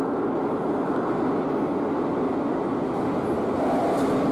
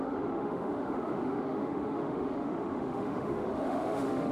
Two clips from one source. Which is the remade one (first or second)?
second